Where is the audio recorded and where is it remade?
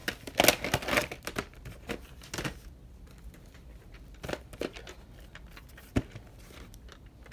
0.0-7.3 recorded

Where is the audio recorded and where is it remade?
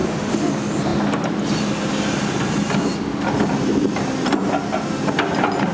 0.0-0.5 remade; 0.5-5.7 recorded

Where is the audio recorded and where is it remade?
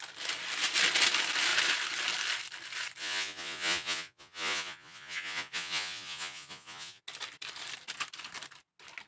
0.0-3.0 recorded; 3.0-7.0 remade; 7.0-9.1 recorded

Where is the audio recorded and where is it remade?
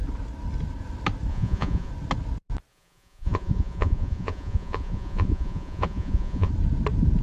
0.0-1.3 recorded; 1.3-1.9 remade; 1.9-2.7 recorded; 2.7-6.5 remade; 6.5-7.2 recorded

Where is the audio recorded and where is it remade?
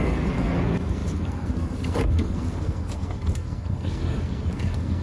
0.0-5.0 remade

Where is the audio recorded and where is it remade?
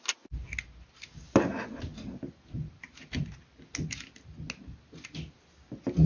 0.0-6.1 recorded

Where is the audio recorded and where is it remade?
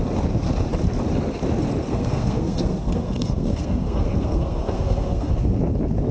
0.0-1.9 recorded; 1.9-5.3 remade; 5.3-6.1 recorded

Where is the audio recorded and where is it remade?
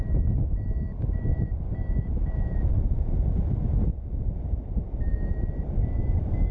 0.0-1.3 recorded; 1.3-3.0 remade; 3.0-6.5 recorded